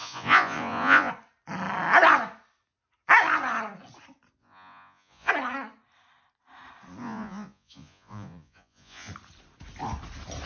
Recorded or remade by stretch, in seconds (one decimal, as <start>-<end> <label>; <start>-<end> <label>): 0.0-1.1 remade; 1.1-4.4 recorded; 4.4-5.3 remade; 5.3-7.0 recorded; 7.0-9.1 remade; 9.1-10.5 recorded